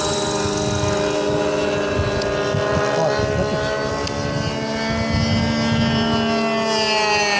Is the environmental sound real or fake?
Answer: real